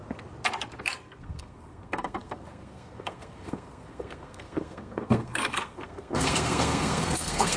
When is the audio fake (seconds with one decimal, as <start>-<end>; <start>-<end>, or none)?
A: 0.8-7.6